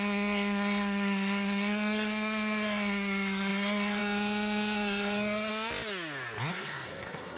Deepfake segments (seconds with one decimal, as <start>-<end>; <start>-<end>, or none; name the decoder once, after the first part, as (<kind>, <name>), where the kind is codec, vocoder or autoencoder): 0.0-5.5 (codec, SNAC); 6.5-7.4